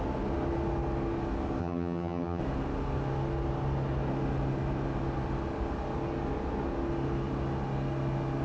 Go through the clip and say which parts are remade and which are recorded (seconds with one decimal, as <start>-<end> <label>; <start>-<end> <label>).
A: 0.0-1.6 recorded; 1.6-2.4 remade; 2.4-8.4 recorded